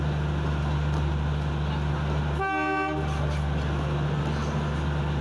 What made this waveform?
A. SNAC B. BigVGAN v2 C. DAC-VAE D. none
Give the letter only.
D